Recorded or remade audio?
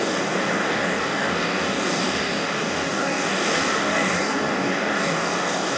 remade